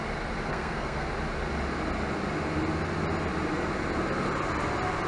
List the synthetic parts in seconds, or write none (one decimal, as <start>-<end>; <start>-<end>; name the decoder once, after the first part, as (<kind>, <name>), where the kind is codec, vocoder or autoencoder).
0.5-1.1 (codec, SNAC)